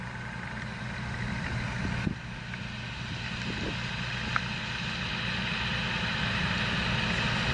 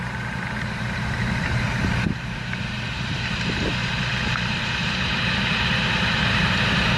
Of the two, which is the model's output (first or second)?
second